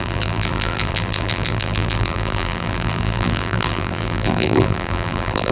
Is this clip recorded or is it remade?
remade